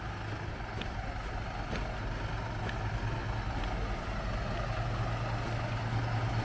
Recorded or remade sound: recorded